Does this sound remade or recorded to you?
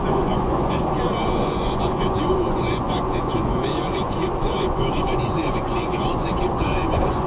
remade